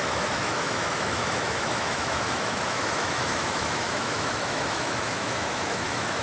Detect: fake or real fake